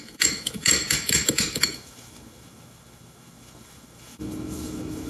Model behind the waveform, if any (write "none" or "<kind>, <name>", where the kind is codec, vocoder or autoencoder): autoencoder, DAC-VAE